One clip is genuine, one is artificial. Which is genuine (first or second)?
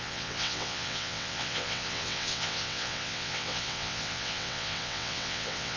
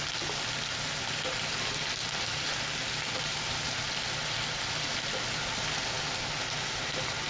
second